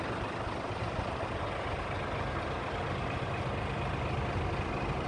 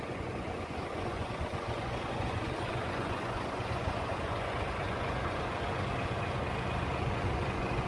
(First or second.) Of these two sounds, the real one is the first